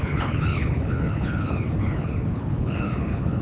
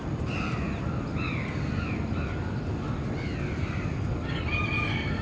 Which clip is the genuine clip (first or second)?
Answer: second